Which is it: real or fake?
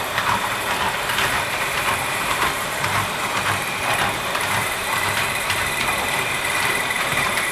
fake